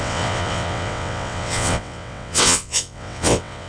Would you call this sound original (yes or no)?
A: no